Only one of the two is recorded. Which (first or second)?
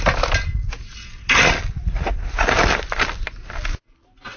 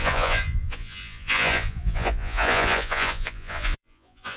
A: first